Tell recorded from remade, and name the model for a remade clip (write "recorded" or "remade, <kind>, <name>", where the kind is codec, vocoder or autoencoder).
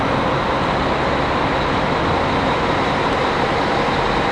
recorded